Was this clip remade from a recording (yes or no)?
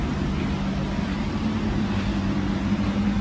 no